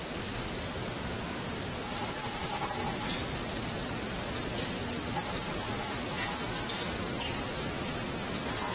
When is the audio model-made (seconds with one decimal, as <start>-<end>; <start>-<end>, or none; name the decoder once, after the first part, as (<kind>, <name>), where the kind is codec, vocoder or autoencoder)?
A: none